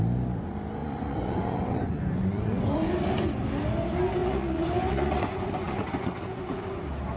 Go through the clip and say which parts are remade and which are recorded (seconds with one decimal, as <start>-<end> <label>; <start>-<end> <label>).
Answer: 0.0-0.8 recorded; 0.8-3.3 remade; 3.3-4.2 recorded; 4.2-6.6 remade; 6.6-7.2 recorded